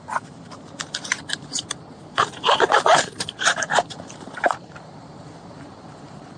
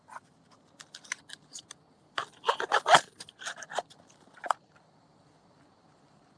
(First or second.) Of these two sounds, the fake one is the first